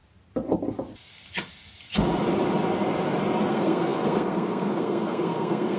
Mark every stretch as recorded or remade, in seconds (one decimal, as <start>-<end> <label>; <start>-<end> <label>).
0.0-3.5 recorded; 3.5-5.8 remade